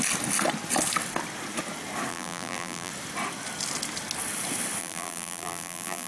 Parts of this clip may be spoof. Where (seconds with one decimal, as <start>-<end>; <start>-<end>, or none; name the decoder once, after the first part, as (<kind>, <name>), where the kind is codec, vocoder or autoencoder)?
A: 2.1-2.9 (vocoder, BigVGAN v2); 4.8-6.1